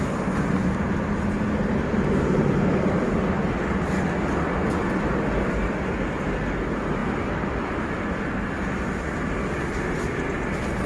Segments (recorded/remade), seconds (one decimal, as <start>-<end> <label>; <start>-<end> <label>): 0.0-10.9 recorded